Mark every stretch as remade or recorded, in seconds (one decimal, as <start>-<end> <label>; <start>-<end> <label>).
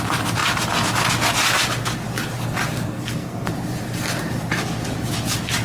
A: 0.0-2.7 recorded; 2.7-3.5 remade; 3.5-5.6 recorded